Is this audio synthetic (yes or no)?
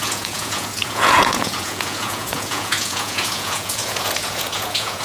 yes